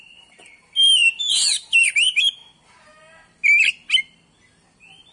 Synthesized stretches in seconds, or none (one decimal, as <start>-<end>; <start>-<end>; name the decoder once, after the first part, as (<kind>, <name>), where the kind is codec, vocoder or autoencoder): 0.0-2.4 (vocoder, BigVGAN v2)

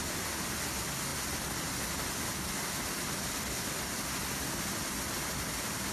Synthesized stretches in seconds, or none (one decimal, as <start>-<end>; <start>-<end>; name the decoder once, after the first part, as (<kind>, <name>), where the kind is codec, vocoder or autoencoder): none

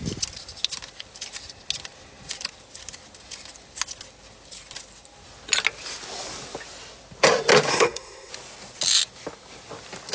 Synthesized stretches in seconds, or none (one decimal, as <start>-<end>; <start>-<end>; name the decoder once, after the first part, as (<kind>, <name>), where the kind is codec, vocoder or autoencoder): 7.7-8.3 (codec, SNAC)

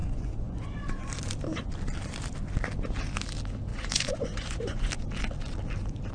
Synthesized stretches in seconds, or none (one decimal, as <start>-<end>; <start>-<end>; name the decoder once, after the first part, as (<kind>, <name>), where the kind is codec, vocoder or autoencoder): 0.0-1.1 (vocoder, Vocos); 3.7-4.9

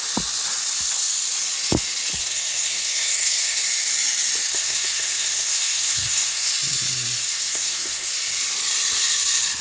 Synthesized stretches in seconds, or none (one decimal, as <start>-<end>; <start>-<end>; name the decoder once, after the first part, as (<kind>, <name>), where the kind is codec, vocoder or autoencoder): 2.2-3.6 (codec, SNAC); 4.5-6.5; 7.2-8.1

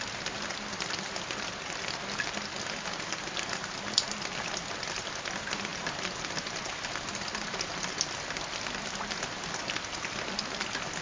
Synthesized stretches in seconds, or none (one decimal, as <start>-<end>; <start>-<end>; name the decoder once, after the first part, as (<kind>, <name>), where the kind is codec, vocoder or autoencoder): none

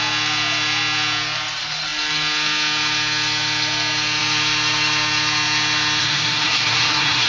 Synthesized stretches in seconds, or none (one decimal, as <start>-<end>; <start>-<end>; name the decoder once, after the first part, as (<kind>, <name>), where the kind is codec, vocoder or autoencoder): 6.0-7.3 (codec, SNAC)

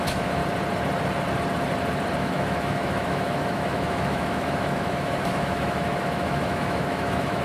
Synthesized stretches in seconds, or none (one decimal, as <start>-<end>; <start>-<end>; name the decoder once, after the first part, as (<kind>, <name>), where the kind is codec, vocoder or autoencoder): 0.0-0.4 (autoencoder, DAC-VAE); 2.2-7.4